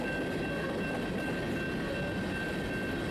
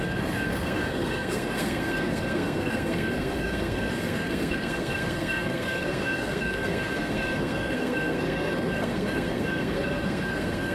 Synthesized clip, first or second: second